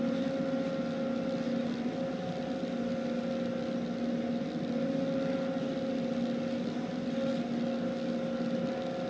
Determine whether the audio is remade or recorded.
recorded